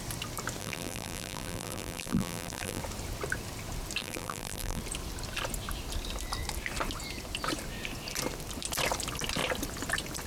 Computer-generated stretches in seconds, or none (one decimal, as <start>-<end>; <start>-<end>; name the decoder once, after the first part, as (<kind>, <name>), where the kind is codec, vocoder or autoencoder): 0.6-2.8 (vocoder, BigVGAN v2); 4.0-4.8